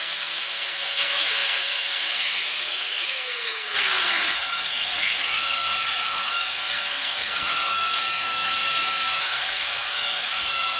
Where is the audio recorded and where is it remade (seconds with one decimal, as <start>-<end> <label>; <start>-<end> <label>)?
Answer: 0.0-10.8 remade